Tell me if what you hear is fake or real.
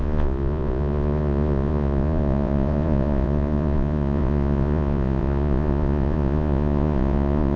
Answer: fake